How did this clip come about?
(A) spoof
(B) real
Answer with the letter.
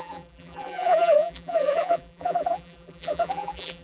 A